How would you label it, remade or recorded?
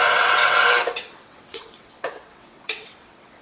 remade